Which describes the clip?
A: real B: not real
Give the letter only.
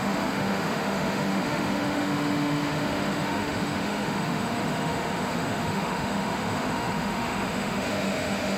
B